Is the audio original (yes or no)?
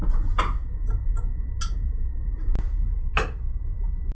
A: yes